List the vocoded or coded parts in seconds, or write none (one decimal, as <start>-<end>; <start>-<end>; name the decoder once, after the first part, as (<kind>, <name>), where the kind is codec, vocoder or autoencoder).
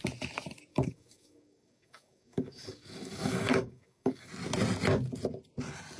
0.7-4.3 (codec, DAC)